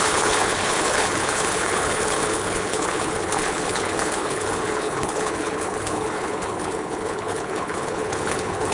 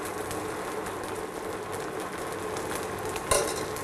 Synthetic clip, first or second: first